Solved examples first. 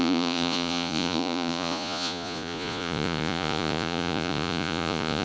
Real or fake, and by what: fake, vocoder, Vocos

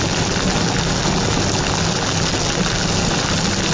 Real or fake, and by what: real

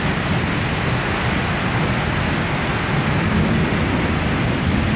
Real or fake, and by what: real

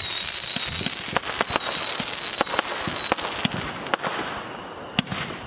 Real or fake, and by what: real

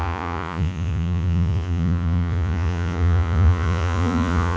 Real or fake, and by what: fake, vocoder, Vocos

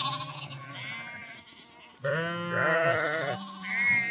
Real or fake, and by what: real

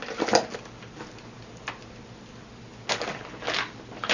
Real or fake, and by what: real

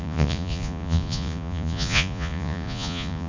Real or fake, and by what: fake, vocoder, Vocos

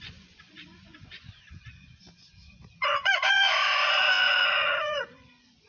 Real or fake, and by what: fake, vocoder, Vocos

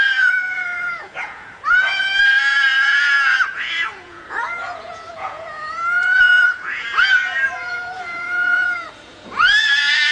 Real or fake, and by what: fake, vocoder, Vocos